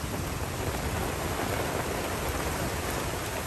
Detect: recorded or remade recorded